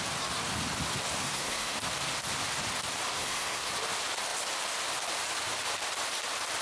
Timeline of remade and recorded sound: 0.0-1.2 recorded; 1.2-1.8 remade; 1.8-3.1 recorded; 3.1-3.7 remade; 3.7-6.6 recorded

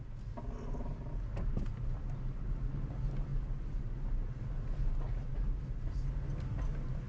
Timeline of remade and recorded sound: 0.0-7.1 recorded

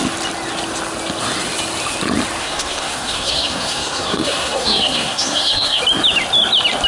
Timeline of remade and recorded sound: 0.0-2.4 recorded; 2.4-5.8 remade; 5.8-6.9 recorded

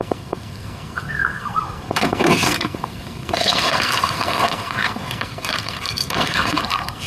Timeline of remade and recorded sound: 0.0-7.1 remade

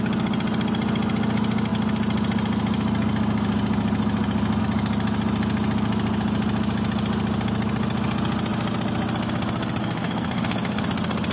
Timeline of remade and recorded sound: 0.0-9.8 recorded; 9.8-10.8 remade; 10.8-11.3 recorded

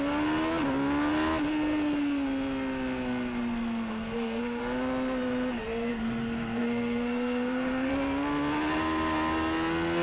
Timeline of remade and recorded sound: 0.0-3.9 recorded; 3.9-4.6 remade; 4.6-5.9 recorded; 5.9-7.9 remade; 7.9-10.0 recorded

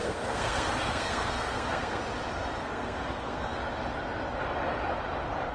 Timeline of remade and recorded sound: 0.0-2.0 remade; 2.0-2.6 recorded; 2.6-3.5 remade; 3.5-5.5 recorded

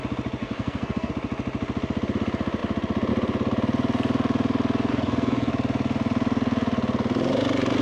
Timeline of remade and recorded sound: 0.0-0.4 recorded; 0.4-1.1 remade; 1.1-4.9 recorded; 4.9-5.5 remade; 5.5-7.8 recorded